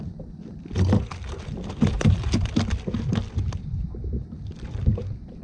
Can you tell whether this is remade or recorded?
recorded